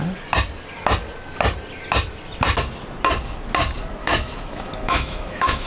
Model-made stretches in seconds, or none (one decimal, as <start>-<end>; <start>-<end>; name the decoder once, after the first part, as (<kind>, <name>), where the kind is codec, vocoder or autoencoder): 4.0-5.7 (autoencoder, DAC-VAE)